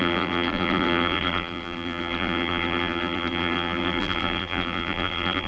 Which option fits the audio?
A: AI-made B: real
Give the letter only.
A